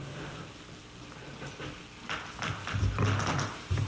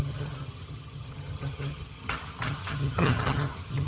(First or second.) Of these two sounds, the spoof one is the second